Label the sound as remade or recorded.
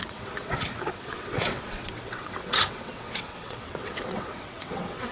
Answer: remade